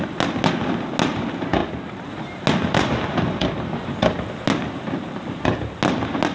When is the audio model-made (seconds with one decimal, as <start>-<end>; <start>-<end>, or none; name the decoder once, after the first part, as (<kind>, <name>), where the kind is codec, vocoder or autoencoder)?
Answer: none